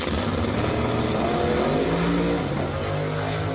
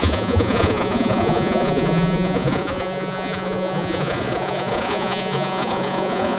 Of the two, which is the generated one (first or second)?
second